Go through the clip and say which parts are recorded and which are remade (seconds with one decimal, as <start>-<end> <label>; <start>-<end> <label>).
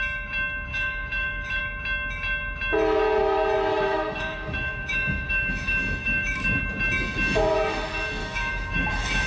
0.0-0.7 recorded; 0.7-1.6 remade; 1.6-3.7 recorded; 3.7-6.6 remade; 6.6-8.2 recorded; 8.2-9.3 remade